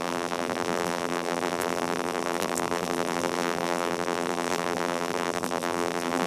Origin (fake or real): fake